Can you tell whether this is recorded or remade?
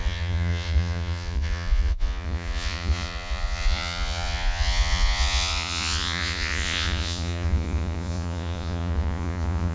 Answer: remade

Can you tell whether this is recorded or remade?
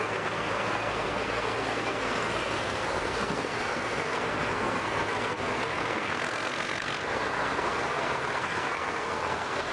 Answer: remade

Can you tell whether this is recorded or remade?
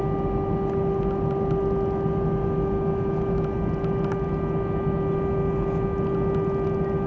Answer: recorded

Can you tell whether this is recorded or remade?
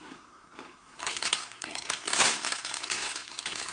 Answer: remade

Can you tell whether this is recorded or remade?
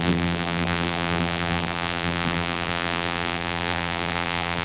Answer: remade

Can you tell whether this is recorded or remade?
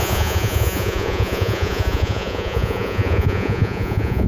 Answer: remade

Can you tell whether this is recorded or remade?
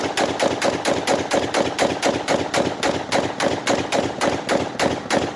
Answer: recorded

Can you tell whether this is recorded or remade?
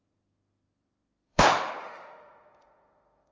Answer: remade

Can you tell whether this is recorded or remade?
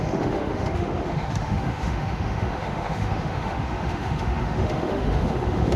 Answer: remade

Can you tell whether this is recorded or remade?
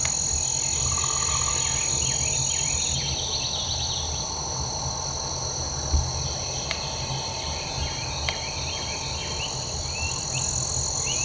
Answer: recorded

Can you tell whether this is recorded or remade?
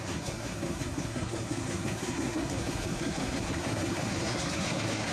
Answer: remade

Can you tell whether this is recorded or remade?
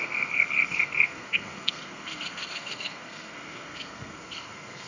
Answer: remade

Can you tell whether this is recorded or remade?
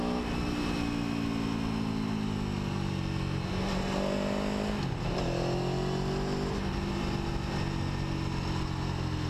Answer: recorded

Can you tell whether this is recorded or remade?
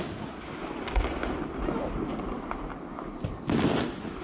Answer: recorded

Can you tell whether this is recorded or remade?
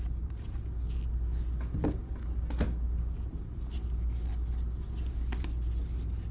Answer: recorded